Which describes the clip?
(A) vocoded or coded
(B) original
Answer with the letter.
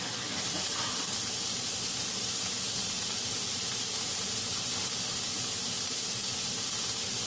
B